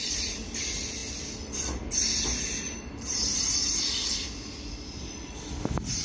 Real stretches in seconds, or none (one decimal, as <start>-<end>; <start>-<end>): 0.0-6.0